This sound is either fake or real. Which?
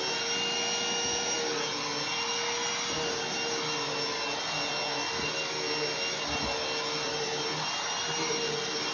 real